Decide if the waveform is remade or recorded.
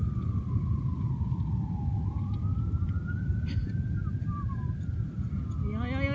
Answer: recorded